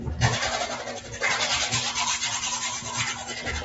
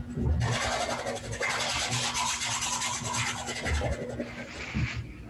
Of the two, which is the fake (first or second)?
first